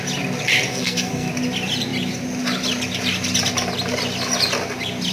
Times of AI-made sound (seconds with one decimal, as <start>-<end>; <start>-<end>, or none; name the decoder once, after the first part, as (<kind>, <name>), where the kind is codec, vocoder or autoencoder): 0.7-1.3 (codec, SNAC)